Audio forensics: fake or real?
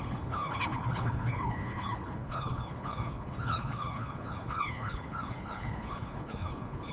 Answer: fake